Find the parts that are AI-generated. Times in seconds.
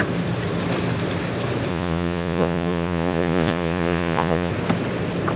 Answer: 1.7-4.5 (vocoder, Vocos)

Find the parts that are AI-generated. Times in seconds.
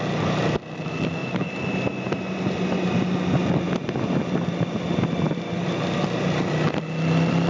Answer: none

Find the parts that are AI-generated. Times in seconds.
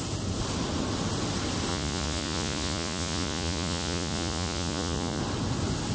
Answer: 1.7-5.2 (vocoder, Vocos)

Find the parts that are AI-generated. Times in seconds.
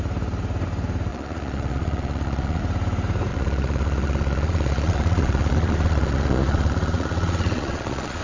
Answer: 1.1-2.6 (vocoder, Vocos); 3.3-8.2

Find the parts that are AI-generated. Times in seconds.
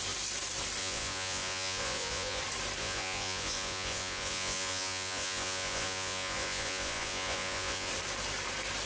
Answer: 0.8-2.4 (vocoder, Vocos); 2.8-7.9